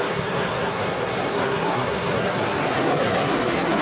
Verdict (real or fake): fake